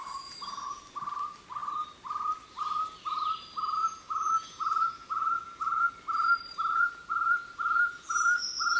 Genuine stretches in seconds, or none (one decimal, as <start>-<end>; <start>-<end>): 0.8-3.8; 5.9-6.7; 8.1-8.8